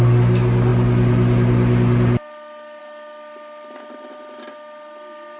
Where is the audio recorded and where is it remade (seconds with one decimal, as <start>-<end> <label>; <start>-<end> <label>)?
0.0-5.4 recorded